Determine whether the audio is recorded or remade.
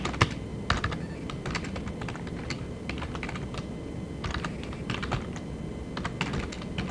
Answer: recorded